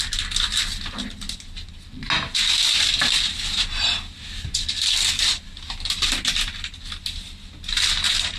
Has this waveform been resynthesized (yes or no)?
no